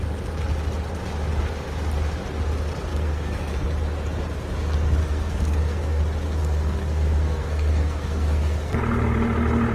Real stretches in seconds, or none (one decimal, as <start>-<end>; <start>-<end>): 0.0-2.9; 3.5-5.0; 6.0-6.4; 8.8-9.7